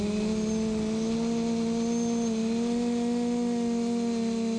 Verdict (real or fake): real